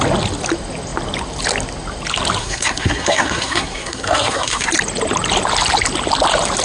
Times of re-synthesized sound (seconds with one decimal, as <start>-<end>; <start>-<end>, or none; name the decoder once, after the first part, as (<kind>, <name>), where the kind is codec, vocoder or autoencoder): 2.4-4.7 (codec, SNAC)